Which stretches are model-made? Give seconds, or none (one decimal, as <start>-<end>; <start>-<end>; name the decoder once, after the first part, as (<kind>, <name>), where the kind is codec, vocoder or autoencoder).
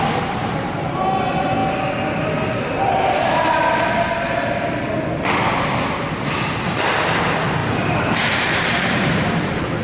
0.4-1.0 (vocoder, BigVGAN v2); 7.6-9.8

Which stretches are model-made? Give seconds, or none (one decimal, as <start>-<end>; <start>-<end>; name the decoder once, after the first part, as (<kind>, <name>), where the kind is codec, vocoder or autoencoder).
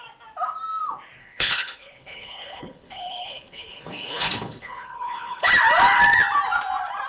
1.2-5.5 (codec, HILCodec)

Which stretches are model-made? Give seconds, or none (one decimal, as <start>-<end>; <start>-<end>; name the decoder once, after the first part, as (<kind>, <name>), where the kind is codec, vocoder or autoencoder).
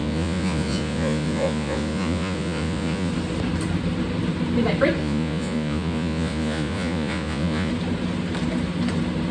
0.0-3.1 (vocoder, Vocos); 5.0-7.7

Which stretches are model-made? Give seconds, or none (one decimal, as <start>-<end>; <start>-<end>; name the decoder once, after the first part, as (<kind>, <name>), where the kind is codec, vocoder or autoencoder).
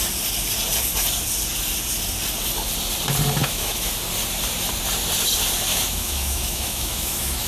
3.4-3.9 (autoencoder, DAC-VAE); 5.7-7.5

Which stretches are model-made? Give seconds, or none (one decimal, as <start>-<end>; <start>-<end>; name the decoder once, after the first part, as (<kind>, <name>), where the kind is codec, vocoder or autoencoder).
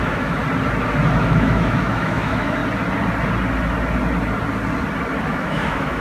0.0-0.4 (autoencoder, DAC-VAE); 1.2-2.6; 5.2-6.0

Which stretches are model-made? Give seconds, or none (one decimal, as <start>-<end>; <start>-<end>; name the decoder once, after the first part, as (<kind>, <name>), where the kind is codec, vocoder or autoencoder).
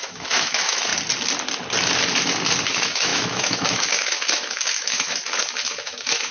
0.0-0.9 (autoencoder, DAC-VAE); 2.7-6.3